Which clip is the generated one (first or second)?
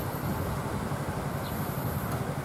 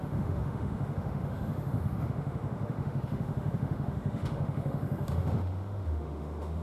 second